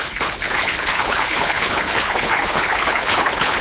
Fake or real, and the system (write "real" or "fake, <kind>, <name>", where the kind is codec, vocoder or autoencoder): fake, codec, HILCodec